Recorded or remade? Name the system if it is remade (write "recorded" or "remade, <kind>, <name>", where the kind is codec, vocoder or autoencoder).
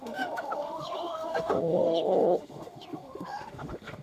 remade, autoencoder, DAC-VAE